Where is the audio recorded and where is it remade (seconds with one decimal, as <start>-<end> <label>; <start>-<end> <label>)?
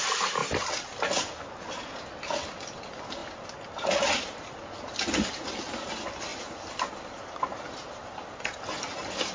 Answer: 0.0-9.3 recorded